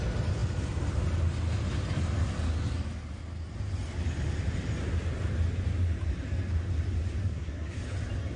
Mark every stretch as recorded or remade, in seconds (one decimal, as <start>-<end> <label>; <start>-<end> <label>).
0.0-7.2 recorded; 7.2-7.8 remade; 7.8-8.4 recorded